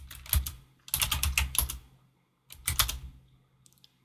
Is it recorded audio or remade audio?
recorded